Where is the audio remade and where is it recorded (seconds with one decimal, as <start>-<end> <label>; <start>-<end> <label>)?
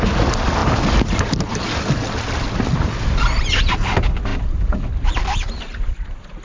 0.0-6.4 recorded